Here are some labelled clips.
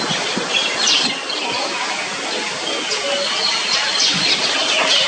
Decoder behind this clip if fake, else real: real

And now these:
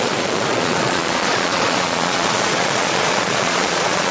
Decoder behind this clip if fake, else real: fake, vocoder, Vocos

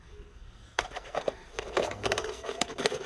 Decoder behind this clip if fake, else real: fake, codec, SNAC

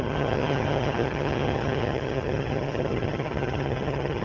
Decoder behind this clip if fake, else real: fake, vocoder, HiFi-GAN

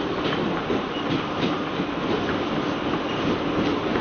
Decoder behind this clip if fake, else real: real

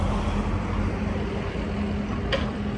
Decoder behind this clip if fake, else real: real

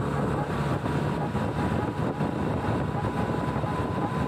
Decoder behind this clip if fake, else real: fake, vocoder, BigVGAN v2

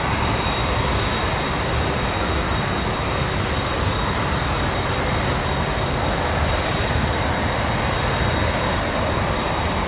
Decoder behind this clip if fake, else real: real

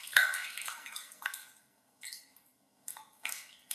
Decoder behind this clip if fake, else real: fake, codec, SNAC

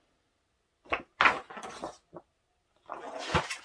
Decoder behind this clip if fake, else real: real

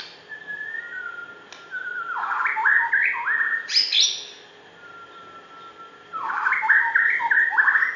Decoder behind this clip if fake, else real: real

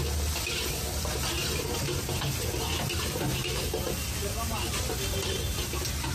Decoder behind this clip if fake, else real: real